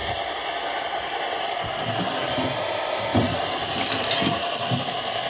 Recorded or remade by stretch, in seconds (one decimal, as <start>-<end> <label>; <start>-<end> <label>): 0.0-5.3 recorded